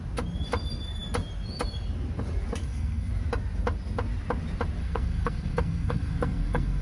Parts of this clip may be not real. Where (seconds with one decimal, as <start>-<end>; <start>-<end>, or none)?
2.6-3.1; 4.8-6.8